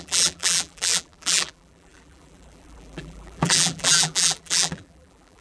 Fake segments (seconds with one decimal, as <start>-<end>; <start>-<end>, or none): 0.0-5.4